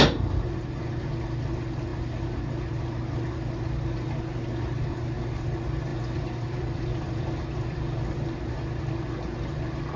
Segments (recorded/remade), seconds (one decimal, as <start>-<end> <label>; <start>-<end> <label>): 0.0-5.9 recorded; 5.9-8.0 remade; 8.0-10.0 recorded